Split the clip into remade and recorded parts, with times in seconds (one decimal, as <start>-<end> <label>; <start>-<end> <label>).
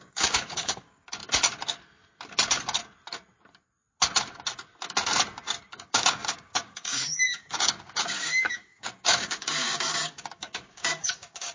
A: 0.0-1.2 remade; 1.2-5.7 recorded; 5.7-11.5 remade